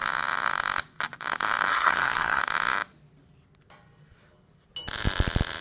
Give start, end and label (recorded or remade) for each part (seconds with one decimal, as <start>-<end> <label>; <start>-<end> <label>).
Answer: 0.0-1.7 recorded; 1.7-2.4 remade; 2.4-5.6 recorded